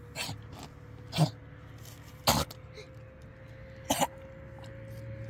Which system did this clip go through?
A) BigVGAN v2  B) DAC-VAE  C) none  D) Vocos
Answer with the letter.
C